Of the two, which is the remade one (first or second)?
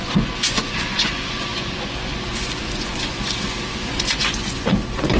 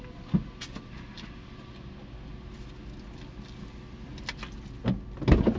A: first